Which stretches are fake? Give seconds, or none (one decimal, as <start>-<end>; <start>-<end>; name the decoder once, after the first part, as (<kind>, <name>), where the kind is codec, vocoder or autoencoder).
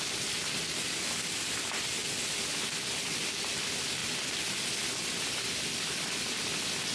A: none